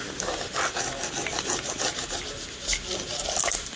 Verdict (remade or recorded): recorded